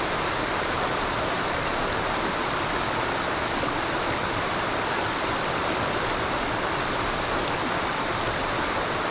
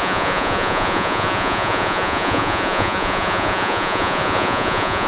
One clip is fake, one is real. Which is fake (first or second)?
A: second